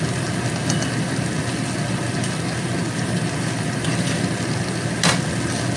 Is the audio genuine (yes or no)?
yes